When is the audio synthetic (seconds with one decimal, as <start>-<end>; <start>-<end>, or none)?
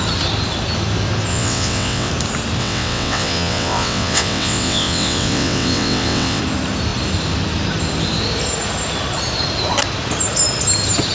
1.3-2.1; 2.6-6.4